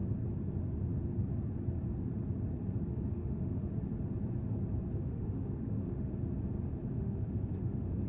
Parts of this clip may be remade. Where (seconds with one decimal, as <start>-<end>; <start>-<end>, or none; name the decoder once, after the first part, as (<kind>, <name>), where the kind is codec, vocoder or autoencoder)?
3.1-3.7 (autoencoder, DAC-VAE); 4.9-6.1; 6.9-8.1